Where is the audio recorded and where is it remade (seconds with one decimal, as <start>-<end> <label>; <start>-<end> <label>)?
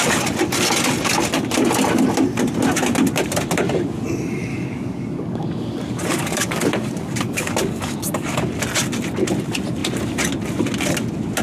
0.0-4.5 recorded; 4.5-8.4 remade; 8.4-11.4 recorded